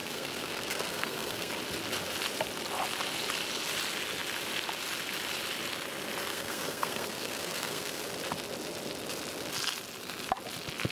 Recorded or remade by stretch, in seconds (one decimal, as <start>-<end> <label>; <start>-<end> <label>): 0.0-1.5 remade; 1.5-6.3 recorded; 6.3-8.0 remade; 8.0-10.9 recorded

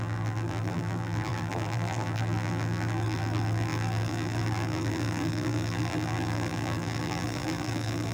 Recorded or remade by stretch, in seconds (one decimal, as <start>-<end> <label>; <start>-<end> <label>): 0.0-8.1 remade